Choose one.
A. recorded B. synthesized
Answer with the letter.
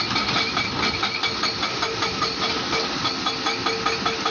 A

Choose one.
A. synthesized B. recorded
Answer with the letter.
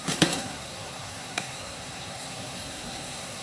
A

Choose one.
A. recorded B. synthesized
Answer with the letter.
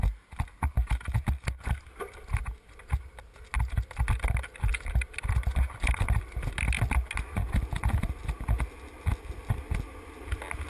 A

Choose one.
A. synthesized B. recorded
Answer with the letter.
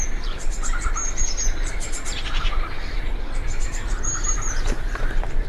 A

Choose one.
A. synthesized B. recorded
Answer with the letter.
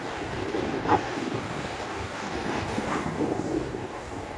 A